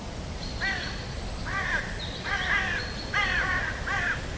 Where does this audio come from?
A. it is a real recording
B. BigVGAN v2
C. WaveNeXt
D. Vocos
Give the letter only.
A